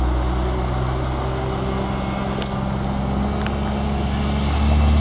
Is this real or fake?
real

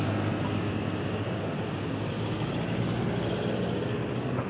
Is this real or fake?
real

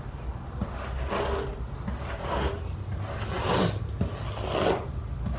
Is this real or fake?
real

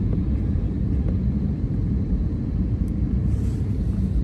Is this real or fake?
fake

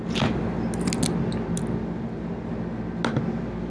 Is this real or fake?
real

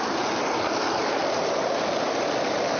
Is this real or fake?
real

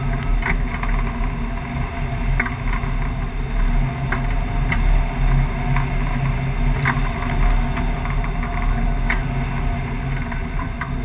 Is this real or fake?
real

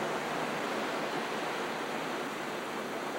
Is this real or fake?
real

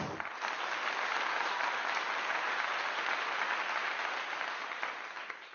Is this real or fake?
real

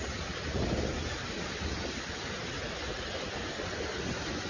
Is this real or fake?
real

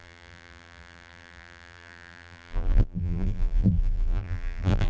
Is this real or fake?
fake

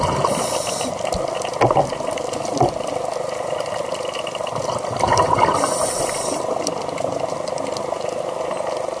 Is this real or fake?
real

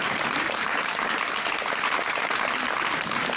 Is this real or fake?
fake